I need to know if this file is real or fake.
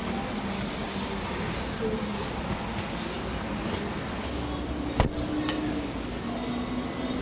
real